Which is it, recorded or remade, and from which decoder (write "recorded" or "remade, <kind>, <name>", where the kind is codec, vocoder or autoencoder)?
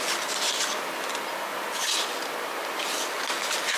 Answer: recorded